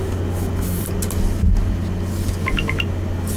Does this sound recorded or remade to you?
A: recorded